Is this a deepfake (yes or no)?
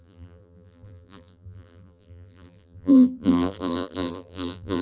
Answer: yes